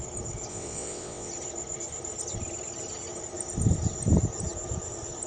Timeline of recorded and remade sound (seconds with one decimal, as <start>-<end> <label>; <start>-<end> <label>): 0.0-0.5 recorded; 0.5-1.3 remade; 1.3-5.3 recorded